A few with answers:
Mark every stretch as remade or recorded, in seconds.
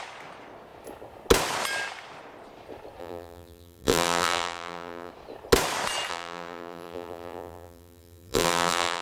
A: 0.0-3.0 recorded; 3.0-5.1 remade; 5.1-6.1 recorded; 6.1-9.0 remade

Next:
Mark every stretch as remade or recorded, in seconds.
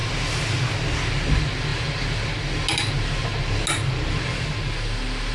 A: 0.0-5.3 recorded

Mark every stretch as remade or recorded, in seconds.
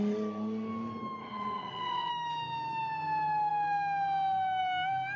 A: 0.0-1.2 recorded; 1.2-2.1 remade; 2.1-5.2 recorded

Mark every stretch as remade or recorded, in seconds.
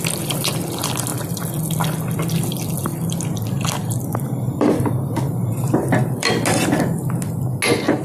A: 0.0-1.1 recorded; 1.1-2.3 remade; 2.3-2.9 recorded; 2.9-6.3 remade; 6.3-8.0 recorded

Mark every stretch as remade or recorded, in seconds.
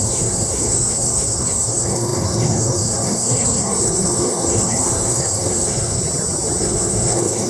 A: 0.0-6.0 remade; 6.0-6.6 recorded; 6.6-7.5 remade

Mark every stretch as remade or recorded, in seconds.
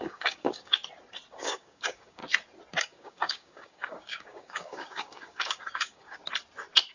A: 0.0-0.8 remade; 0.8-1.3 recorded; 1.3-2.2 remade; 2.2-2.8 recorded; 2.8-6.2 remade; 6.2-6.9 recorded